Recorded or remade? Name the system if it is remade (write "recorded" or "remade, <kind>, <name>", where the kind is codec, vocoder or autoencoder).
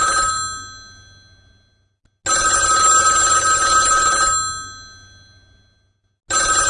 recorded